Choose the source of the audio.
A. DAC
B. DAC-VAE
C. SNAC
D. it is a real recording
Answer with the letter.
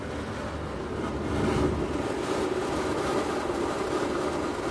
D